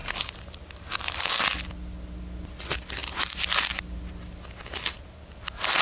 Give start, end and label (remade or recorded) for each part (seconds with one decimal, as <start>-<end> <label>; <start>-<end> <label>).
0.0-1.3 remade; 1.3-3.0 recorded; 3.0-3.8 remade; 3.8-5.8 recorded